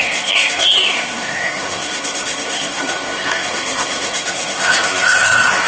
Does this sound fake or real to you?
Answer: fake